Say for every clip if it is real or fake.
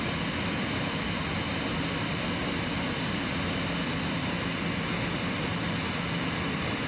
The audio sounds real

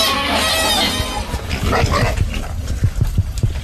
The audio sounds real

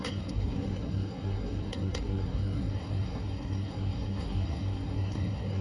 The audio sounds fake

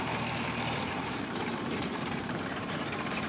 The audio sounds fake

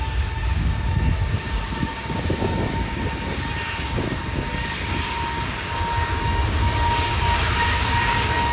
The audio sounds fake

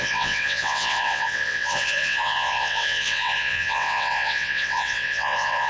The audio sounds fake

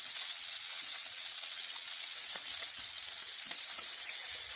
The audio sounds fake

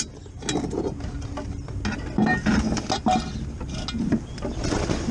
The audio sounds real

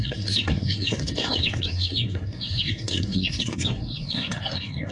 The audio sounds fake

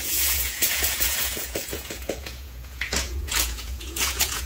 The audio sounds fake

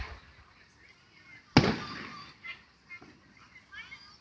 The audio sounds real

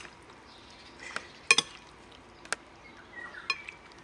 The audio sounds real